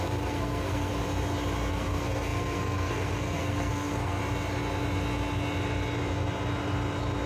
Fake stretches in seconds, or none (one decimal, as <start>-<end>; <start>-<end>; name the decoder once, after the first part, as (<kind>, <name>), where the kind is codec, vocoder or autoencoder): 0.0-0.9 (codec, SNAC); 1.7-4.2